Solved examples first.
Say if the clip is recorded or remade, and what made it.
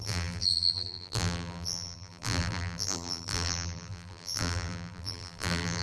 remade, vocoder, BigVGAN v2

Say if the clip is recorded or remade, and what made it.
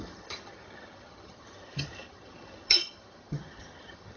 remade, vocoder, HiFi-GAN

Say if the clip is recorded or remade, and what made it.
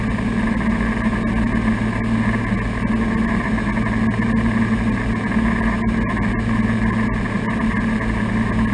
recorded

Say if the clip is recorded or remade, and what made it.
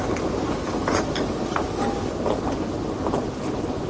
recorded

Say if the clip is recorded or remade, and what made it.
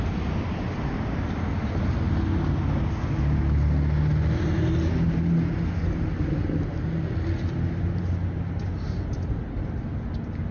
recorded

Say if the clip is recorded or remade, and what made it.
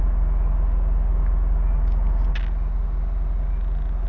recorded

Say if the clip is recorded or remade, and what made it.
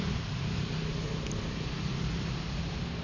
recorded